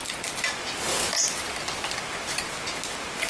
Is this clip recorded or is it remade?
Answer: recorded